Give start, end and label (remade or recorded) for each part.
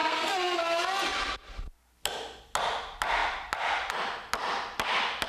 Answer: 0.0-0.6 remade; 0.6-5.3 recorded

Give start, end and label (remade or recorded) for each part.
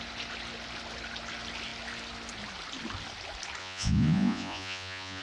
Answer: 0.0-3.6 recorded; 3.6-5.2 remade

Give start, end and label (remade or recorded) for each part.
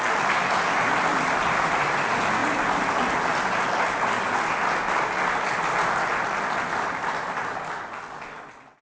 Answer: 0.0-8.9 recorded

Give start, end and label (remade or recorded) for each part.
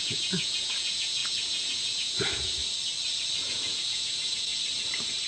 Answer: 0.0-2.6 remade; 2.6-3.4 recorded; 3.4-4.5 remade; 4.5-5.3 recorded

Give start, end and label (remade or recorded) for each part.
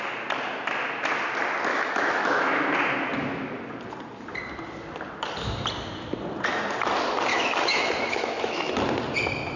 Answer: 0.0-1.7 recorded; 1.7-2.5 remade; 2.5-7.3 recorded; 7.3-8.7 remade; 8.7-9.6 recorded